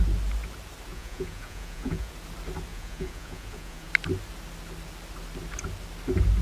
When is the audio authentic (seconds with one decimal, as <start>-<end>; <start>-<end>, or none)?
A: 0.0-0.9; 2.1-2.7; 3.9-6.4